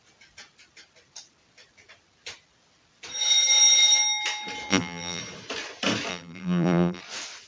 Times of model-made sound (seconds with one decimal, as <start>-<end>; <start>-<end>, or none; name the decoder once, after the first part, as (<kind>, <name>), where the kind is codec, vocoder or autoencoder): 4.7-5.2 (vocoder, BigVGAN v2); 6.1-7.0